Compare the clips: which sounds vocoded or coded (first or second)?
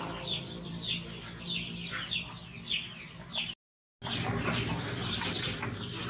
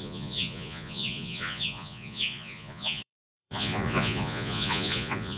second